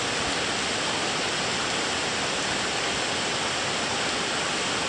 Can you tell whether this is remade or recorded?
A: recorded